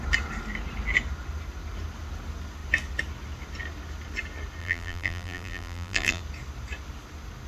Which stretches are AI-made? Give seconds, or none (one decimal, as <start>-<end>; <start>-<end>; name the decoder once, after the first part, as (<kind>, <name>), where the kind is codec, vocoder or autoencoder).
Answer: 4.6-6.2 (vocoder, BigVGAN v2)